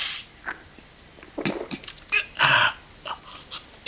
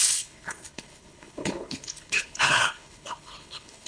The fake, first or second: second